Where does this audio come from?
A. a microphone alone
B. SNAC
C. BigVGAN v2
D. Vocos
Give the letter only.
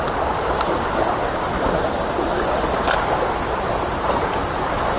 A